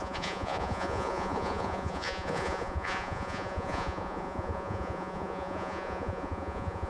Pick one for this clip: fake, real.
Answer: fake